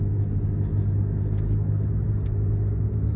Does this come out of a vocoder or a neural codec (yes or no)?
no